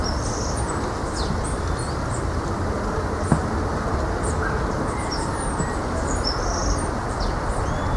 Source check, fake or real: fake